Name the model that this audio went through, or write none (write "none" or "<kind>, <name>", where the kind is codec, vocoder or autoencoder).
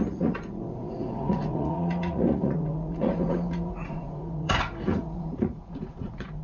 vocoder, Vocos